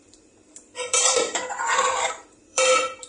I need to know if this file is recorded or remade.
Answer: remade